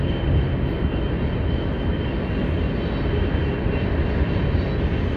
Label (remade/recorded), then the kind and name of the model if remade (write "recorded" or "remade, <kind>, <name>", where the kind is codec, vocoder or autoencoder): recorded